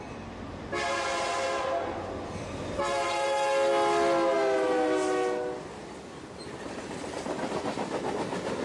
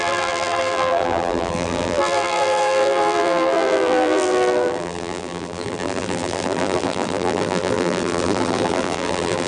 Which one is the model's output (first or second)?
second